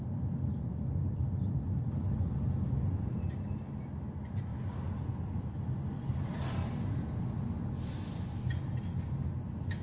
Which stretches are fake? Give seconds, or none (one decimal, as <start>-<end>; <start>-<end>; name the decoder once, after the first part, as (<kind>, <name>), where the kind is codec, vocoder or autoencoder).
none